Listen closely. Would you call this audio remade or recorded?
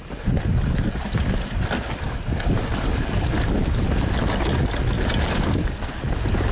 recorded